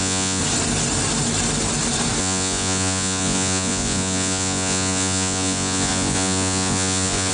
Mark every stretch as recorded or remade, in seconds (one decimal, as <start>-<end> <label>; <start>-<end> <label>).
0.0-0.4 remade; 0.4-2.2 recorded; 2.2-7.3 remade